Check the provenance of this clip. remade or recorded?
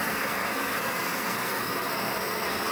remade